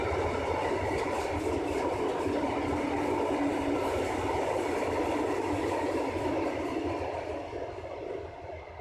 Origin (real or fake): real